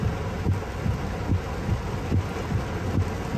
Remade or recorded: recorded